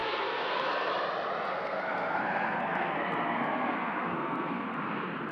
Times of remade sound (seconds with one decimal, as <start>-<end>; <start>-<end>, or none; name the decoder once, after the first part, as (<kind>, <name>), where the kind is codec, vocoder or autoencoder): 0.0-0.9 (codec, SNAC); 1.5-4.7